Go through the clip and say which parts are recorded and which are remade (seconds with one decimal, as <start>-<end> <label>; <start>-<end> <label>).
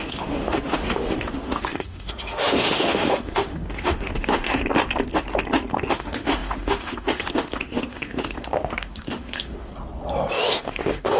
0.0-4.6 remade; 4.6-5.9 recorded; 5.9-9.7 remade; 9.7-10.3 recorded; 10.3-11.2 remade